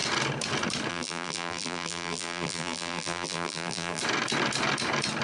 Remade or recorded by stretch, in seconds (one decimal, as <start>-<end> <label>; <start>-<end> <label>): 0.0-0.9 recorded; 0.9-4.0 remade; 4.0-5.2 recorded

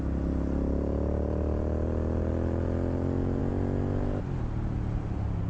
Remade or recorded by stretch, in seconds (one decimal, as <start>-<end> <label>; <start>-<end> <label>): 0.0-5.5 recorded

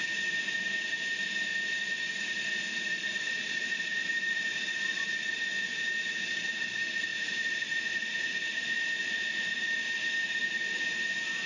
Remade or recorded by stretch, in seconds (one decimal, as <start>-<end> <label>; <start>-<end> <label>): 0.0-1.5 recorded; 1.5-4.6 remade; 4.6-7.1 recorded; 7.1-11.5 remade

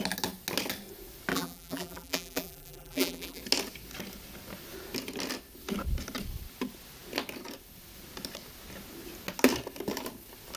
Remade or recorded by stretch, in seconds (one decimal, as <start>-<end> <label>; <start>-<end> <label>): 0.0-1.3 recorded; 1.3-3.4 remade; 3.4-10.6 recorded

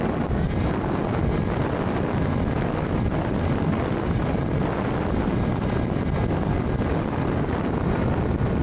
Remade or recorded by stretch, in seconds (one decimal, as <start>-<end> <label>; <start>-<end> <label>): 0.0-1.0 remade; 1.0-2.9 recorded; 2.9-6.2 remade; 6.2-8.6 recorded